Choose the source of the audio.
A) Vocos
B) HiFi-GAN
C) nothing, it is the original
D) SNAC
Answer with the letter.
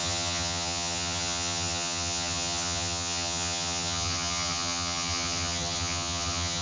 B